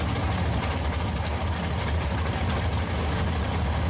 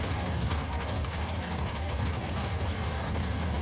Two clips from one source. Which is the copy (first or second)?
second